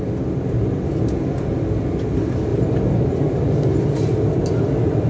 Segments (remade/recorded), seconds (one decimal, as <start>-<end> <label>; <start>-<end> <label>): 0.0-5.1 recorded